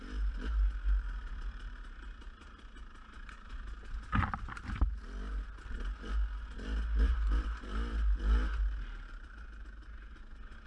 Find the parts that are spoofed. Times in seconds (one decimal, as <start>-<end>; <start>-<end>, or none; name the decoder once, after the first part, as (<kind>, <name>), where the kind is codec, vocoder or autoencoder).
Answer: none